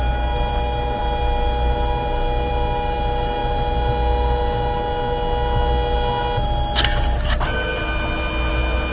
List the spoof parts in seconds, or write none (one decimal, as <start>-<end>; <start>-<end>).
none